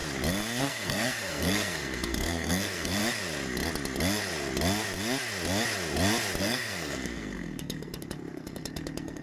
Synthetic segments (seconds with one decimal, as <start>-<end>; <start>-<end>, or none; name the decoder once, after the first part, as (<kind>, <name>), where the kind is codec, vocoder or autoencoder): 0.6-3.0 (codec, SNAC); 6.4-9.2